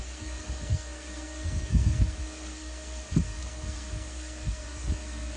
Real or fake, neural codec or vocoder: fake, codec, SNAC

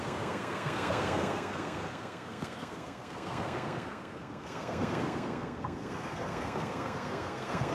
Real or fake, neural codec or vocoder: fake, codec, SNAC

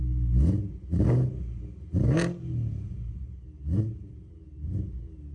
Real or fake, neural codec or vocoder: real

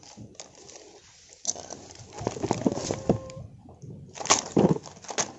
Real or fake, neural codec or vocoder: real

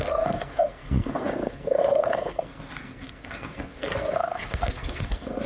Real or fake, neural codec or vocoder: fake, codec, SNAC